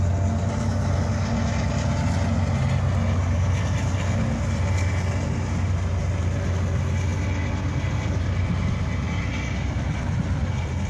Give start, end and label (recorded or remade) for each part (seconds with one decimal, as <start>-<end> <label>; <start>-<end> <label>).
0.0-10.9 recorded